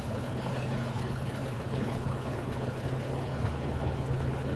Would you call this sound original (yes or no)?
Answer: no